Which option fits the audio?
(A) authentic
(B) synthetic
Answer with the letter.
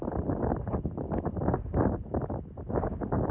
A